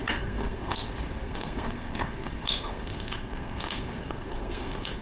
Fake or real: fake